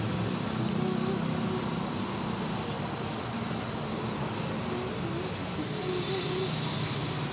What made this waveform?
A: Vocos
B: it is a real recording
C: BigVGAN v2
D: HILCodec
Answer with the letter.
B